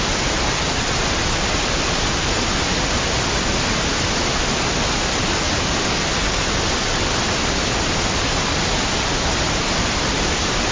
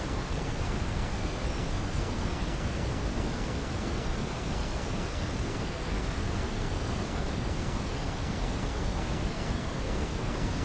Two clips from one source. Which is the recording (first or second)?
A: first